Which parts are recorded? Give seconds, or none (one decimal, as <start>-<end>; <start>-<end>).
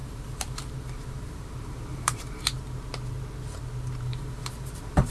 2.4-4.1